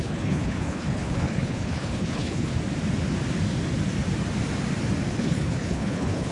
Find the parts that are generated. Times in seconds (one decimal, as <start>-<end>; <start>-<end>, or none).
0.0-2.5; 5.1-6.3